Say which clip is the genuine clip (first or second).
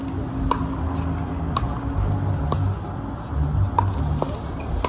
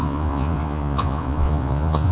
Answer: first